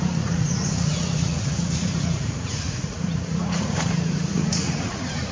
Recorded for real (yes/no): no